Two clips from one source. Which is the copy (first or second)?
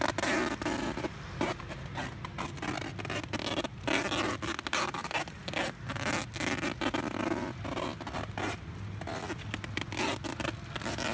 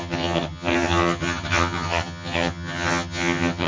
second